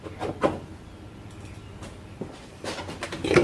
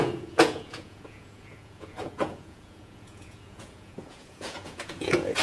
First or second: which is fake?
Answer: second